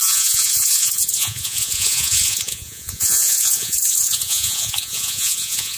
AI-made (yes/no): yes